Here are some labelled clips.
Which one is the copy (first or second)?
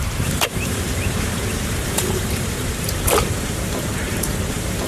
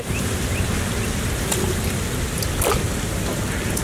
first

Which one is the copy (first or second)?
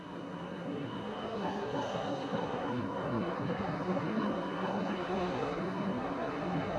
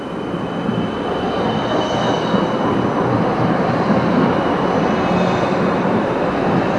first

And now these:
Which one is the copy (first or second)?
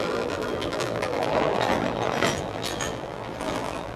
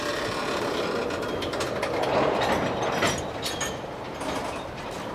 first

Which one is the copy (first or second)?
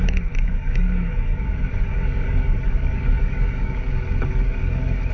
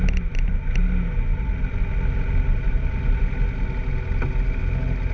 first